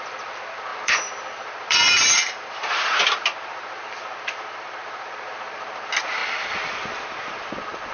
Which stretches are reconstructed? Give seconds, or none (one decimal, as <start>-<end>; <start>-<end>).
0.7-3.0; 6.2-6.7